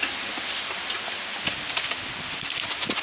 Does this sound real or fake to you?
real